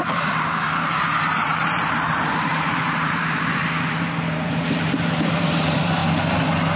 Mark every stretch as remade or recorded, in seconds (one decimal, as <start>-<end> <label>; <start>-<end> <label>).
0.0-6.0 remade; 6.0-6.8 recorded